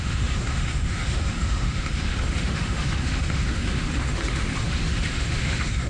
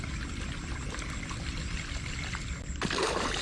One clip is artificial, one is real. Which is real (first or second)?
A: second